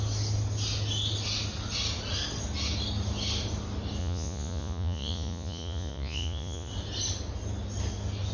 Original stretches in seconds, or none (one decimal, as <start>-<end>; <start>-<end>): 0.0-4.0; 6.7-8.3